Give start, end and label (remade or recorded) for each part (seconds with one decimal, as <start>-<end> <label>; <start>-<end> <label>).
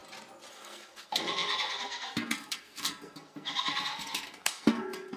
0.0-0.5 recorded; 0.5-5.2 remade